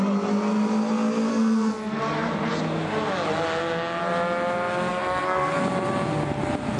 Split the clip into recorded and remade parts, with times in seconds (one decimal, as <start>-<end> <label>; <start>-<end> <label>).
0.0-1.3 recorded; 1.3-2.0 remade; 2.0-4.9 recorded; 4.9-5.6 remade; 5.6-6.8 recorded